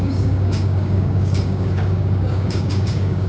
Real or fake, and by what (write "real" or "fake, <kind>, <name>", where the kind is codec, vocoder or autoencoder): fake, codec, DAC